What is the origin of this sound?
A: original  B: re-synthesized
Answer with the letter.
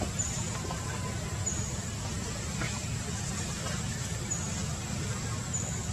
A